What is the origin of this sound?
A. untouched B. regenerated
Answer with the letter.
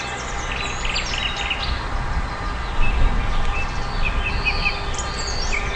A